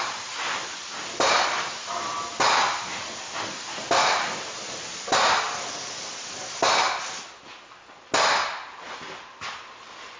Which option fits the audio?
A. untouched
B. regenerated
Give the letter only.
A